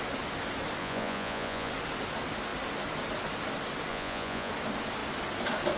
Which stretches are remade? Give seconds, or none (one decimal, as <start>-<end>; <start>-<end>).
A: 0.8-1.7; 3.9-4.5